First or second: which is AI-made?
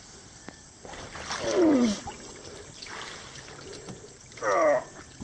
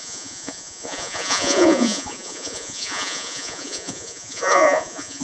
second